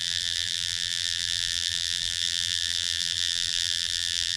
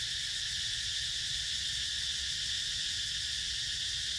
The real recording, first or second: second